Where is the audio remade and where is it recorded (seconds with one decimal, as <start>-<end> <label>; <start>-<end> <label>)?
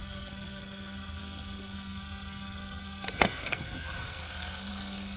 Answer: 0.0-5.2 remade